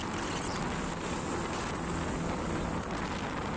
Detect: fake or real real